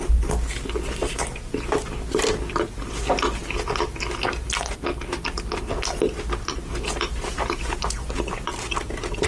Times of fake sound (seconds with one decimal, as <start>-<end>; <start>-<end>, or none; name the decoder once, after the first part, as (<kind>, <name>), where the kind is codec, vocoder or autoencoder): none

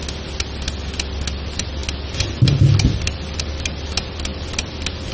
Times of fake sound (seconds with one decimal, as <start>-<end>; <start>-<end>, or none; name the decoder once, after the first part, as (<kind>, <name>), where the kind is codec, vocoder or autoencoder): none

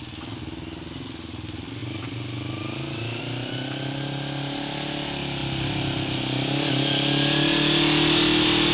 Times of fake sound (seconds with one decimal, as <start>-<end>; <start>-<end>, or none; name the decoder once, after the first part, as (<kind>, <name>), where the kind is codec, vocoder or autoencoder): none

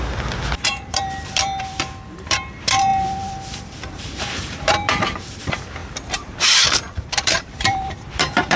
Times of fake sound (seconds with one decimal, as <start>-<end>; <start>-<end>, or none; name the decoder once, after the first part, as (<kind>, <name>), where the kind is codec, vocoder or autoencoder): 0.0-8.6 (vocoder, BigVGAN v2)

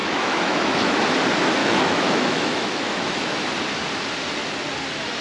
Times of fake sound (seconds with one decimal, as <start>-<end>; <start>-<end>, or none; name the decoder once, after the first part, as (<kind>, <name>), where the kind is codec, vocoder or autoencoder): 0.0-1.0 (autoencoder, DAC-VAE); 1.6-3.4

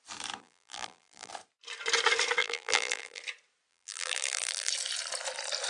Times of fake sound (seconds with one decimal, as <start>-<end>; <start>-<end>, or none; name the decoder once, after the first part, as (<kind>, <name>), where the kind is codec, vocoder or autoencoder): 0.4-1.3 (vocoder, BigVGAN v2); 2.4-3.2; 3.7-4.7